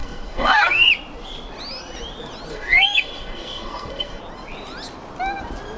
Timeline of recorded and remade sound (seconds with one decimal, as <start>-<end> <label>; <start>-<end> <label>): 0.0-0.9 remade; 0.9-2.5 recorded; 2.5-4.2 remade; 4.2-5.8 recorded